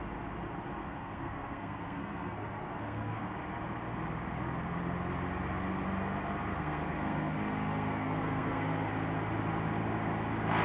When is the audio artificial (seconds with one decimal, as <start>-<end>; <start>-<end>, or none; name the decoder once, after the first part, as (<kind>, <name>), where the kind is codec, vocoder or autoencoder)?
0.8-3.2 (codec, SNAC); 6.5-8.9